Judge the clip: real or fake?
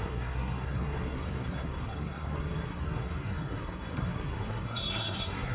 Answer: fake